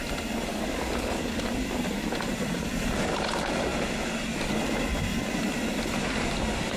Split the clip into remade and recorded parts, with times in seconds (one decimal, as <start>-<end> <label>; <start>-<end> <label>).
0.0-0.5 recorded; 0.5-1.4 remade; 1.4-6.8 recorded